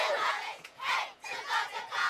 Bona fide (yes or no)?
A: no